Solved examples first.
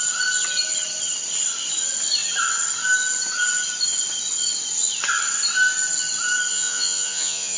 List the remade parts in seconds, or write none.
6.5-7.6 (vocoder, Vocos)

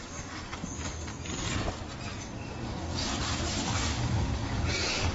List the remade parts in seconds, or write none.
0.0-1.1 (codec, DAC); 2.2-3.0; 3.8-5.1

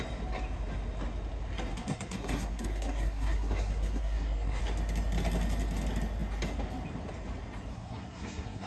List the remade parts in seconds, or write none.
1.7-4.6 (codec, SNAC); 7.7-8.7

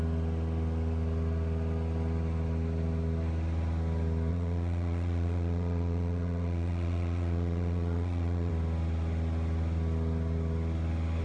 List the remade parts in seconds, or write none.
4.3-8.5 (vocoder, Vocos)